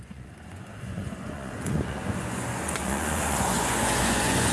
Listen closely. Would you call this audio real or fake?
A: fake